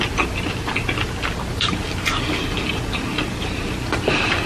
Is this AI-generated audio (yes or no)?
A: no